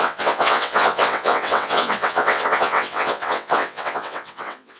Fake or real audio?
fake